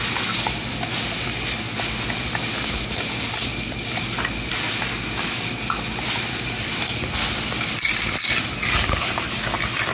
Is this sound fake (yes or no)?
no